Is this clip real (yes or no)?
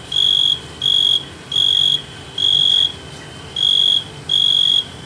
yes